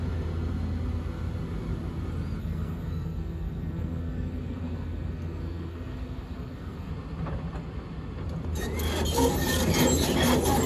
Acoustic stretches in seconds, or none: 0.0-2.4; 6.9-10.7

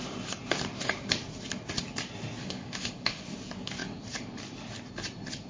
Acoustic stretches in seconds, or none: 0.0-2.4; 3.2-5.5